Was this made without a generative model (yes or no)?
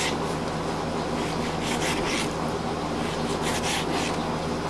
yes